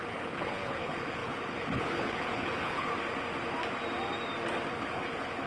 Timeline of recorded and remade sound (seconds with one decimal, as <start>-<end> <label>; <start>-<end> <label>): 0.0-2.9 remade; 2.9-4.7 recorded; 4.7-5.5 remade